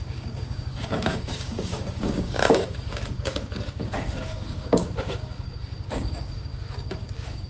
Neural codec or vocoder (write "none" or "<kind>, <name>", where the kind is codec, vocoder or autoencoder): codec, DAC